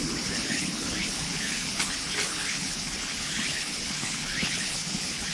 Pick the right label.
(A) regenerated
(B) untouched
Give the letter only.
A